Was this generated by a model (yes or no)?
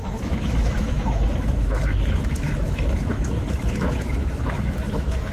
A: yes